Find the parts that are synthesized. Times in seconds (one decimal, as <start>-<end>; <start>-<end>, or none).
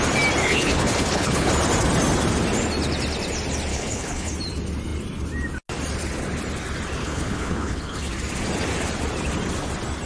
0.4-1.5; 3.7-4.3; 7.0-8.1